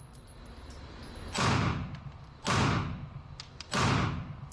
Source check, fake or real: fake